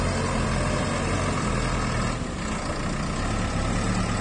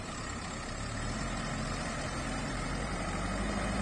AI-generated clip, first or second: second